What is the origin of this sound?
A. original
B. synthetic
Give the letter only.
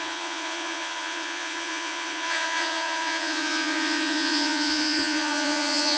B